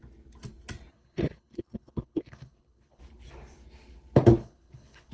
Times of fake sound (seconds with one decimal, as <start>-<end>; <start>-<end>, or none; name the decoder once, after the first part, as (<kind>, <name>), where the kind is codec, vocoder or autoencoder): 0.9-3.0 (codec, HILCodec); 4.4-5.1